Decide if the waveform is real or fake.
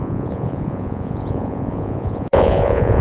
fake